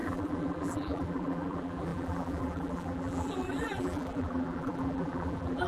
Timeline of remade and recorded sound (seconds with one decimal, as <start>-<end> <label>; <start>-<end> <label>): 0.0-5.7 remade